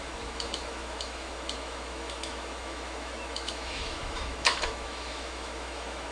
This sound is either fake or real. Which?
fake